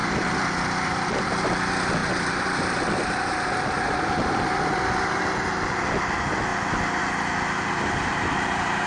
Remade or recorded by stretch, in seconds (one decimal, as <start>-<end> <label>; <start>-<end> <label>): 0.0-1.3 remade; 1.3-2.0 recorded; 2.0-4.1 remade; 4.1-8.9 recorded